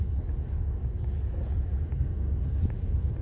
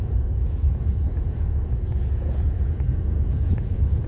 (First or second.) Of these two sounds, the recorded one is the first